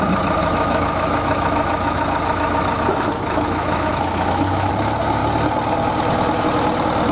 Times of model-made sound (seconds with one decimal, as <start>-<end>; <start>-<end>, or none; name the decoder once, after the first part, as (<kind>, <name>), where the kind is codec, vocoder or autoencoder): 0.4-4.7 (autoencoder, DAC-VAE)